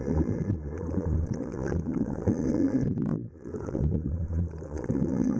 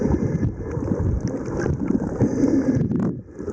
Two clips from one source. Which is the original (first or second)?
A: second